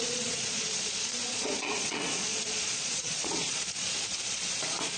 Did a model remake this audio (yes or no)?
yes